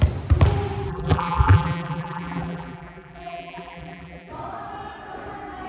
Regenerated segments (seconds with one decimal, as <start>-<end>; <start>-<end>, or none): 0.9-4.3